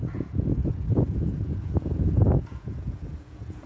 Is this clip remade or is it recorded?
remade